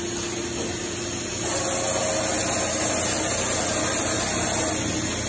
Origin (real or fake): real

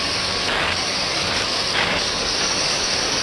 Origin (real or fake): fake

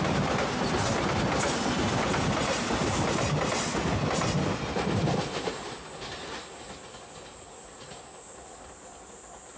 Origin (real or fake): real